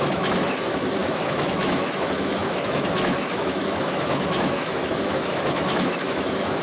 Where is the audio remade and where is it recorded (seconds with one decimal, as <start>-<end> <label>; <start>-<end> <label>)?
0.0-6.6 remade